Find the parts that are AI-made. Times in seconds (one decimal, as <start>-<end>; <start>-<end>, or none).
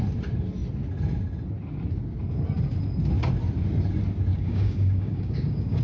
4.3-5.8